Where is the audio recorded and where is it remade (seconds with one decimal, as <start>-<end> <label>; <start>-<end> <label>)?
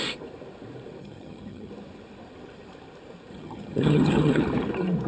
0.0-1.0 recorded; 1.0-1.7 remade; 1.7-3.3 recorded; 3.3-4.4 remade; 4.4-5.1 recorded